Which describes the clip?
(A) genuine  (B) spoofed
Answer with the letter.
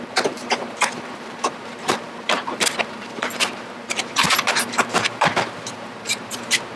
B